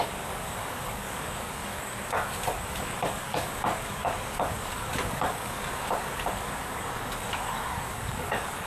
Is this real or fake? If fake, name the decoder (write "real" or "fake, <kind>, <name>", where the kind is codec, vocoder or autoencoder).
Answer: fake, codec, DAC